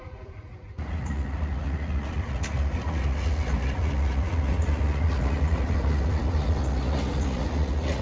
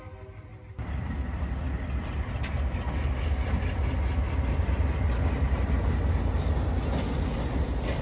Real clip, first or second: second